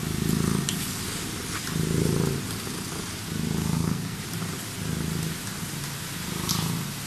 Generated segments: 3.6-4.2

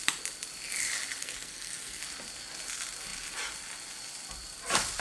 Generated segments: 1.2-2.0

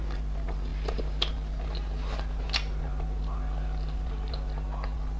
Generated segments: none

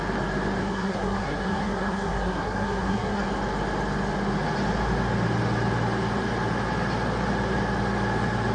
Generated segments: 0.6-3.2

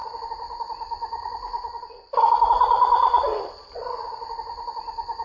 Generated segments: 0.0-5.2